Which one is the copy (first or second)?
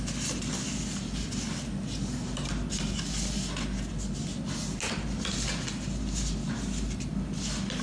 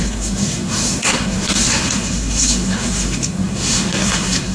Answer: second